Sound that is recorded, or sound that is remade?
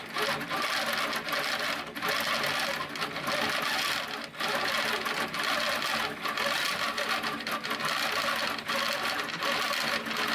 recorded